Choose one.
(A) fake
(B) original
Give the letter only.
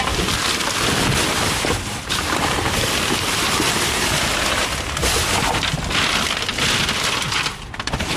A